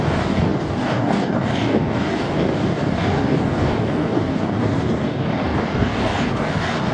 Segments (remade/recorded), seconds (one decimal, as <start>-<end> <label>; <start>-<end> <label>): 0.0-6.9 remade

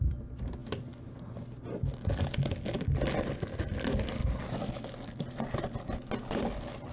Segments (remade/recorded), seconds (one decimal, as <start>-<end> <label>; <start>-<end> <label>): 0.0-6.9 recorded

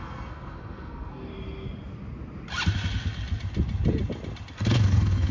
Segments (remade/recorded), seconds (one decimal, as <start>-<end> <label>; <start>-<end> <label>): 0.0-1.3 remade; 1.3-4.5 recorded; 4.5-5.3 remade

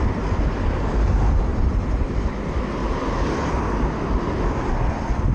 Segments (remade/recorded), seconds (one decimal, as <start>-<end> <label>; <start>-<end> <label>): 0.0-1.5 recorded; 1.5-2.3 remade; 2.3-2.8 recorded; 2.8-3.6 remade; 3.6-5.3 recorded

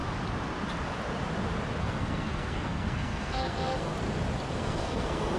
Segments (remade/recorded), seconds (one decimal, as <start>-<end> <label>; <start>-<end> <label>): 0.0-1.8 recorded; 1.8-3.9 remade; 3.9-4.5 recorded; 4.5-5.4 remade

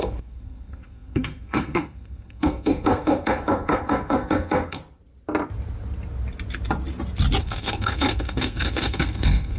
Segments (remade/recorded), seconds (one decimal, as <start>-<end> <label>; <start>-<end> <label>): 0.0-4.8 remade; 4.8-7.4 recorded; 7.4-9.6 remade

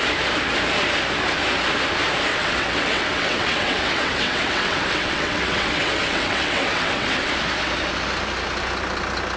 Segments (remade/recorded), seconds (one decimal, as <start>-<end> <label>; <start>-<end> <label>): 0.0-2.3 recorded; 2.3-7.3 remade; 7.3-9.4 recorded